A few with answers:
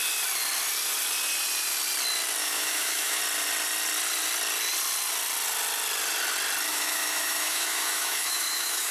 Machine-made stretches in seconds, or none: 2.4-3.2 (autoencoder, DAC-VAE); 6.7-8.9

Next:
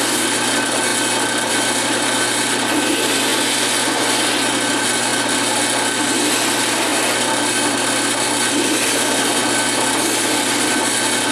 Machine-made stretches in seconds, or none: 3.3-4.2 (vocoder, Vocos)

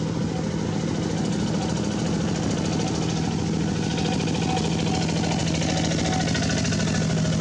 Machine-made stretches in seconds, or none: none

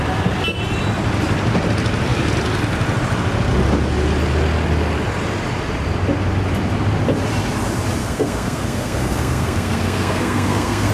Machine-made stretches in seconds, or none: 8.0-10.9 (codec, SNAC)